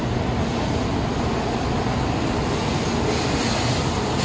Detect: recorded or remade recorded